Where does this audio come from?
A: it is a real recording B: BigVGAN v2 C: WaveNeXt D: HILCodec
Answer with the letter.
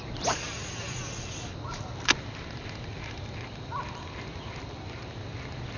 A